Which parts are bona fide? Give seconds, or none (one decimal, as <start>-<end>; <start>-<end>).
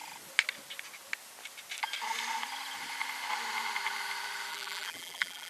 0.0-4.5